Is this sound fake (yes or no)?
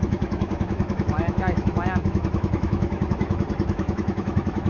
yes